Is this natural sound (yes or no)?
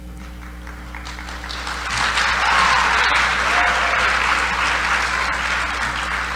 yes